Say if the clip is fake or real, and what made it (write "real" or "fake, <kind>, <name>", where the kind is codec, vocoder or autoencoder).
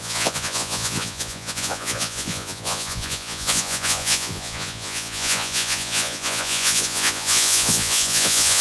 fake, vocoder, Vocos